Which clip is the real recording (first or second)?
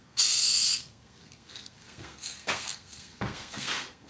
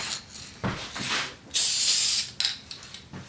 second